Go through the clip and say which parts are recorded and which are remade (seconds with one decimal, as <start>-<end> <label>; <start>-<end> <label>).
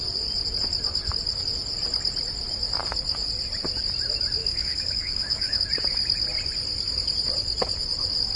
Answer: 0.0-4.4 recorded; 4.4-5.6 remade; 5.6-8.4 recorded